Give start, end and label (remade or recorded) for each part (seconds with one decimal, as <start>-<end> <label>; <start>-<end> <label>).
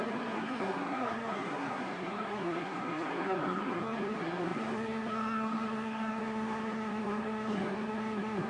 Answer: 0.0-8.5 remade